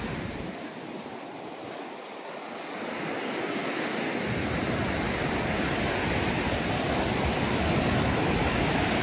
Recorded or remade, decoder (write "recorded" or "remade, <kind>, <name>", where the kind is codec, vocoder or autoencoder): recorded